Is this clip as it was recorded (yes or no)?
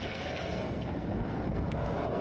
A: no